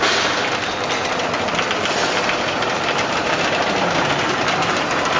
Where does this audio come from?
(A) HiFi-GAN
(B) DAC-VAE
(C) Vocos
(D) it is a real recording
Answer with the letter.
D